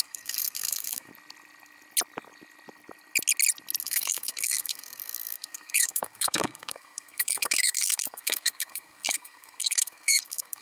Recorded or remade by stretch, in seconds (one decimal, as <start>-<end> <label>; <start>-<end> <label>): 0.0-1.1 remade; 1.1-3.8 recorded; 3.8-10.6 remade